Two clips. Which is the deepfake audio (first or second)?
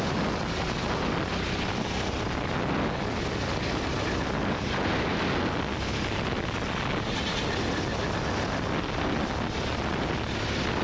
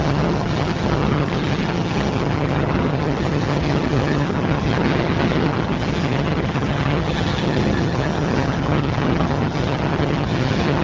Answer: second